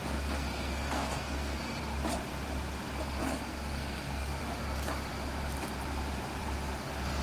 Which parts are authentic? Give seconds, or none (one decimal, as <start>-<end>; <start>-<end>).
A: 1.6-3.2; 4.4-7.2